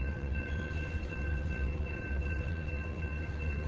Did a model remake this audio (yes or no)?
yes